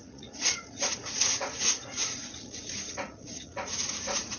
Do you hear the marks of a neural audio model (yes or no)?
yes